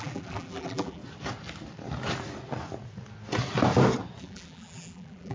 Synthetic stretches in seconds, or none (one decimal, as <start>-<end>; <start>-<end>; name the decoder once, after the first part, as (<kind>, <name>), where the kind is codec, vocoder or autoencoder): 0.0-1.0 (vocoder, BigVGAN v2); 4.2-5.3